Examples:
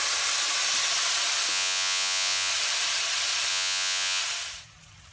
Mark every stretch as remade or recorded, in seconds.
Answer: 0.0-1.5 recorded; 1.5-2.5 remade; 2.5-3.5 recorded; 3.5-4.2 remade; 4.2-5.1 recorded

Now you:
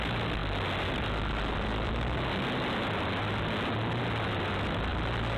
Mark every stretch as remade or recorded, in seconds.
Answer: 0.0-5.4 recorded

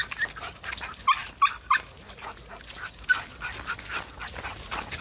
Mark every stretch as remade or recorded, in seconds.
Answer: 0.0-5.0 recorded

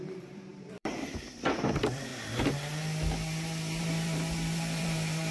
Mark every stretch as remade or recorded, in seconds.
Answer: 0.0-2.1 remade; 2.1-3.8 recorded; 3.8-5.3 remade

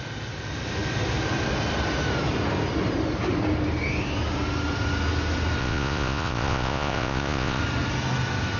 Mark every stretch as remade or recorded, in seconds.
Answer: 0.0-5.6 recorded; 5.6-7.6 remade; 7.6-8.6 recorded

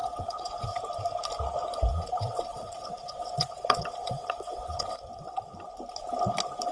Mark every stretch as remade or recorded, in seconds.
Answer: 0.0-0.8 remade; 0.8-1.9 recorded; 1.9-5.4 remade; 5.4-6.7 recorded

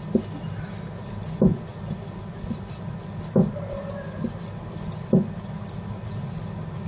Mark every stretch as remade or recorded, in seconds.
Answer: 0.0-1.5 recorded; 1.5-4.6 remade; 4.6-6.9 recorded